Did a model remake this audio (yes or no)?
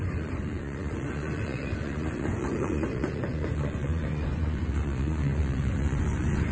yes